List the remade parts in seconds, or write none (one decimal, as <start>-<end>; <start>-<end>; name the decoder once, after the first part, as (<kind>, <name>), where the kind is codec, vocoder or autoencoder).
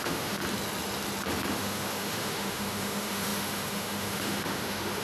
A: 0.0-0.4 (autoencoder, DAC-VAE); 1.5-5.0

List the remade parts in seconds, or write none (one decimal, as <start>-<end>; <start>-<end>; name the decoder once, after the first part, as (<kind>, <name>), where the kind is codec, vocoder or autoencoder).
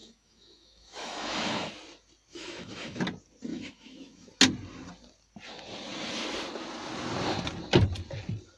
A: 0.0-1.7 (autoencoder, DAC-VAE); 2.3-3.0; 3.5-4.3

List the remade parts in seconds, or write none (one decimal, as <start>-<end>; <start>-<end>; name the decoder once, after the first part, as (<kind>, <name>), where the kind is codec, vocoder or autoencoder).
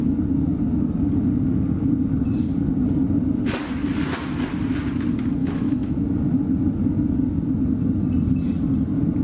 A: 5.4-5.9 (autoencoder, DAC-VAE)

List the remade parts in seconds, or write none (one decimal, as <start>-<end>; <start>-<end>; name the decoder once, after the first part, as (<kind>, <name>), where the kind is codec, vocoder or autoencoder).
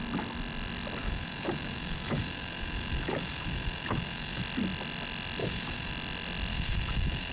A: 1.0-4.4 (autoencoder, DAC-VAE); 5.4-5.9; 6.5-7.3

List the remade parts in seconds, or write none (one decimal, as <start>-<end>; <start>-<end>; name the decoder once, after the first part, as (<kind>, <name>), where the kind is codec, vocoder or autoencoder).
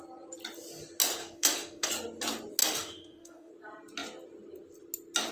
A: 1.2-1.9 (autoencoder, DAC-VAE); 2.6-3.5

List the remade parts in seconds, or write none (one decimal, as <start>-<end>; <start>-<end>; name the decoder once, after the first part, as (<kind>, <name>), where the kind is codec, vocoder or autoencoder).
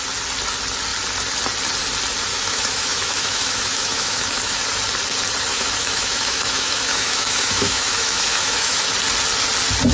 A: 2.3-4.6 (autoencoder, DAC-VAE); 5.5-8.8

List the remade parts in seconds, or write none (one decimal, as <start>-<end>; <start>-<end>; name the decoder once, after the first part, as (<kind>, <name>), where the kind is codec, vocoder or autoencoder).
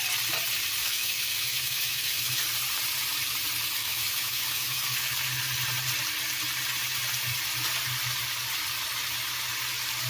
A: 0.8-2.4 (autoencoder, DAC-VAE); 3.8-5.1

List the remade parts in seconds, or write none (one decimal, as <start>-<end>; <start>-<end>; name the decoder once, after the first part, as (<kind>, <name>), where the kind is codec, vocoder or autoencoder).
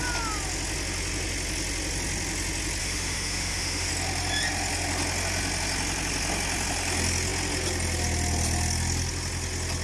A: 2.8-3.9 (autoencoder, DAC-VAE)